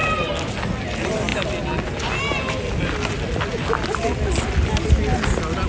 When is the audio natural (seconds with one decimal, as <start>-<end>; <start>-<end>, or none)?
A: 0.0-5.7